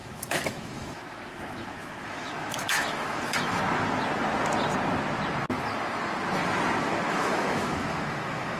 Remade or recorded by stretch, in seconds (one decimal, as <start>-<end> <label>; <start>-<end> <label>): 0.0-3.6 remade; 3.6-7.1 recorded; 7.1-8.6 remade